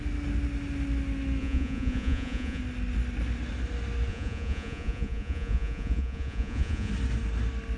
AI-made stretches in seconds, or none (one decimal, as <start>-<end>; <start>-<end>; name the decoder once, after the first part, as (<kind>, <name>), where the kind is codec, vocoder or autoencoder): 1.4-2.6 (vocoder, Vocos); 4.1-6.9